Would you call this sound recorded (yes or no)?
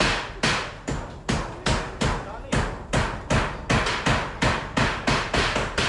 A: yes